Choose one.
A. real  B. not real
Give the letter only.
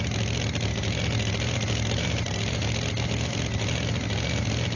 A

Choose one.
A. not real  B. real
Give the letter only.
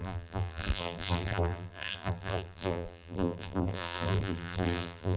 A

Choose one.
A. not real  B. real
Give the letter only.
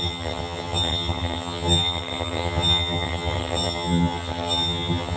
A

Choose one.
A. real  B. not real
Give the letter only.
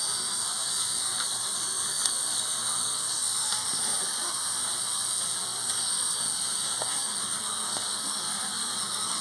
B